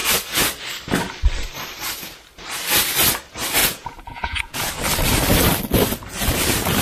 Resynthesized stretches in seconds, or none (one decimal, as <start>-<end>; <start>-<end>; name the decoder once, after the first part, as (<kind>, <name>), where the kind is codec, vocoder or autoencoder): 3.6-4.7 (vocoder, Vocos)